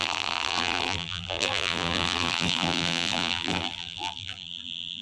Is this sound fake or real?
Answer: fake